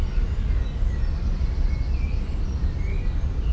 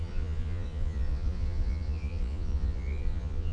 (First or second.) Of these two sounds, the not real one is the second